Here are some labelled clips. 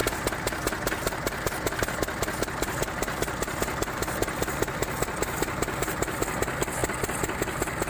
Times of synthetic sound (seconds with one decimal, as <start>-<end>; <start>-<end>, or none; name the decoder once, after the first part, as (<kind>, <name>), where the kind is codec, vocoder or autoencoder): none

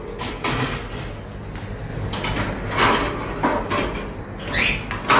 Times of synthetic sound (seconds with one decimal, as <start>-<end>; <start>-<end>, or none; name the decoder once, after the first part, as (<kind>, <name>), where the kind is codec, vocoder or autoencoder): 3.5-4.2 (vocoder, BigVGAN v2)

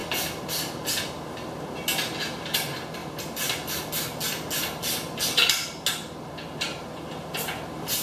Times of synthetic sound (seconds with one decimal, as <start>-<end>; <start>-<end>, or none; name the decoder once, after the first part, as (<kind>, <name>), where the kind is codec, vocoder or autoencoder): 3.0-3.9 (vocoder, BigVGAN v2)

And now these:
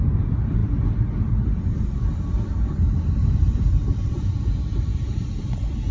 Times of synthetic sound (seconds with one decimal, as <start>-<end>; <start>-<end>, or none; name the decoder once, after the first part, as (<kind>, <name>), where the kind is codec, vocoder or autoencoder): 0.0-5.9 (vocoder, BigVGAN v2)

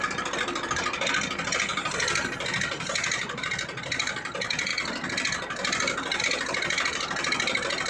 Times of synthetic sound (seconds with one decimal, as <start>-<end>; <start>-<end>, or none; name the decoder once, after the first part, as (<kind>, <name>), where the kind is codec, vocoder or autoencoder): 0.0-1.7 (vocoder, BigVGAN v2); 4.1-4.7; 6.2-7.9

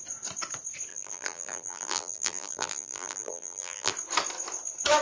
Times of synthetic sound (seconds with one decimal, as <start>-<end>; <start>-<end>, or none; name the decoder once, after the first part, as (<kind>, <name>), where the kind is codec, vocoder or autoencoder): 0.9-3.9 (vocoder, BigVGAN v2)

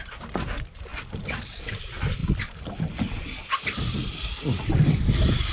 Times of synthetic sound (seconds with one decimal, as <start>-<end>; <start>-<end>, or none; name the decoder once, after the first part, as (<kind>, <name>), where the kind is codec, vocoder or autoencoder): 0.0-0.9 (vocoder, BigVGAN v2); 1.4-5.5